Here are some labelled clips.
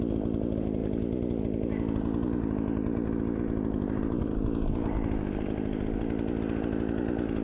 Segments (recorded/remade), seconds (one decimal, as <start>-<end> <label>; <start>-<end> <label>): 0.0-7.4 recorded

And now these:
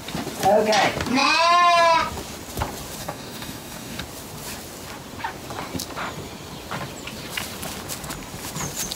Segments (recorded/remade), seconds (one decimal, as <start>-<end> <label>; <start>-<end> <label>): 0.0-3.0 recorded; 3.0-4.0 remade; 4.0-8.9 recorded

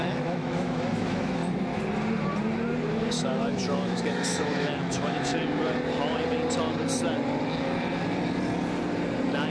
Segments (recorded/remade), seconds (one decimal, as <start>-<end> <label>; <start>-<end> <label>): 0.0-1.4 remade; 1.4-3.1 recorded; 3.1-5.3 remade; 5.3-9.5 recorded

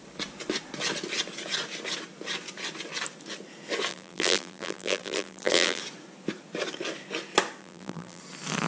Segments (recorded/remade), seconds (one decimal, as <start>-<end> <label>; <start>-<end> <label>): 0.0-3.9 recorded; 3.9-5.8 remade; 5.8-7.6 recorded; 7.6-8.2 remade; 8.2-8.7 recorded

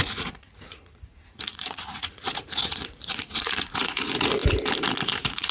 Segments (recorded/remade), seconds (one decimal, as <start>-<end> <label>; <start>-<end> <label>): 0.0-4.4 remade; 4.4-5.1 recorded; 5.1-5.5 remade